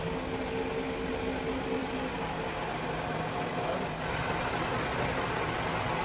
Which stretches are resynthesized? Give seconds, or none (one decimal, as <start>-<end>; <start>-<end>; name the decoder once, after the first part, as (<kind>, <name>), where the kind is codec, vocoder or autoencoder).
none